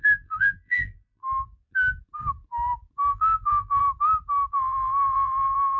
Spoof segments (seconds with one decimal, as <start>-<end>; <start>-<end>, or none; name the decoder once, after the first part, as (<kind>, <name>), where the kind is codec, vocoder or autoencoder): 0.0-1.2 (vocoder, BigVGAN v2); 3.1-3.8; 4.5-5.8